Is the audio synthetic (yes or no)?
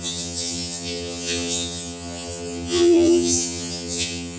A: yes